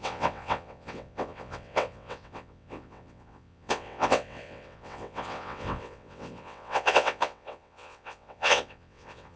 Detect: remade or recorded remade